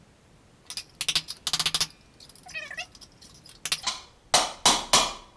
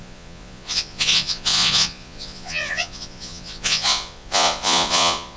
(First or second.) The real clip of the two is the first